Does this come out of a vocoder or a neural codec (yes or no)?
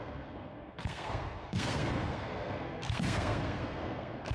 yes